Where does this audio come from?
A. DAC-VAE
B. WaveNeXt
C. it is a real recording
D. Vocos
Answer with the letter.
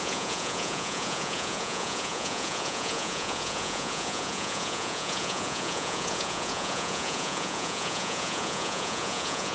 D